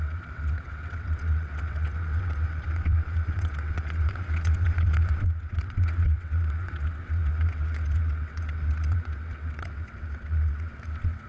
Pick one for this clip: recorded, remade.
remade